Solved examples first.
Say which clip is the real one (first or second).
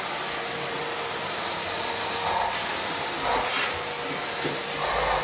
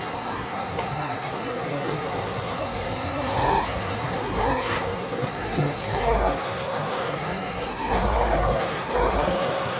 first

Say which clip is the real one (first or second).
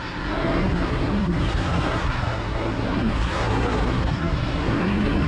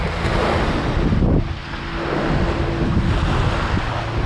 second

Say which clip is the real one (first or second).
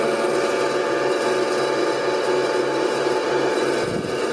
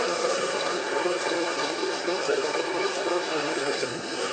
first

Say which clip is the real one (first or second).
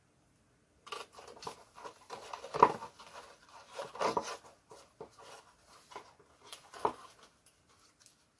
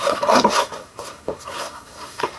first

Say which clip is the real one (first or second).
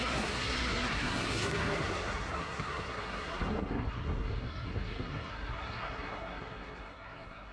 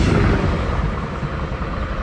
second